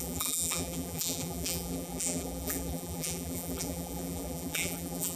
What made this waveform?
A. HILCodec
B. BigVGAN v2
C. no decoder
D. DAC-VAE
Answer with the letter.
B